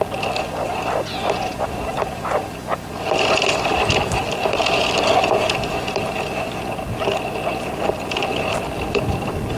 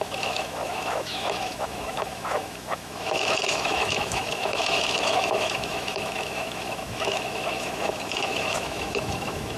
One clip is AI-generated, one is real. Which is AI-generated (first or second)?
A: second